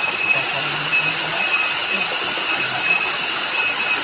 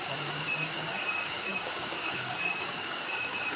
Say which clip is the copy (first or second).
second